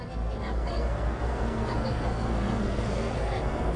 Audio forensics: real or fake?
fake